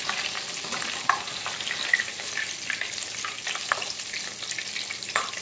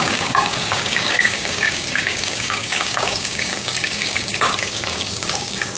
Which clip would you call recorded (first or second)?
first